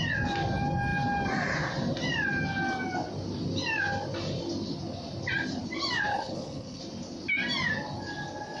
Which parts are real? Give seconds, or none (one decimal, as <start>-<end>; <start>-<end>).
0.0-6.1; 6.8-8.6